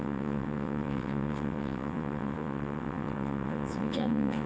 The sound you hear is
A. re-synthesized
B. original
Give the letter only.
A